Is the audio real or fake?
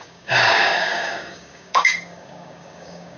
fake